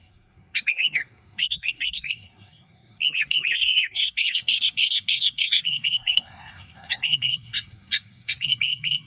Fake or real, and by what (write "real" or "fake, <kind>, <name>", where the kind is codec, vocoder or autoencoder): fake, codec, SNAC